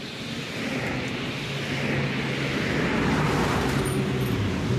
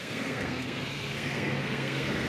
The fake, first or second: second